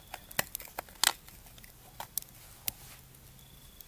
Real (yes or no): yes